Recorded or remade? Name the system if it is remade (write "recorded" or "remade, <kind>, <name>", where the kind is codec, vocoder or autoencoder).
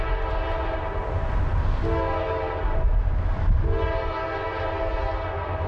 recorded